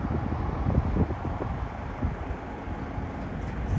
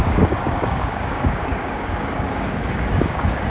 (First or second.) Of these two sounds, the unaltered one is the first